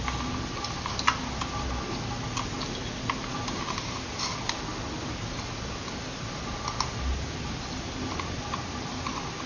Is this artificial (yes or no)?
no